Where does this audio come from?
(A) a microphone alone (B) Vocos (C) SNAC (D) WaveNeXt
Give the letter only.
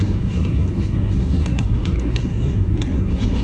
C